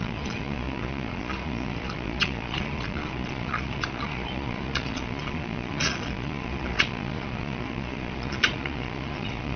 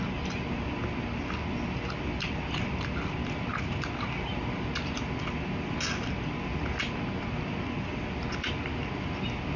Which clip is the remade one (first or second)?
first